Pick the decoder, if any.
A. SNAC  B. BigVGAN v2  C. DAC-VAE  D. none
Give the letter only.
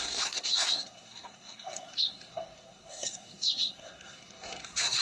A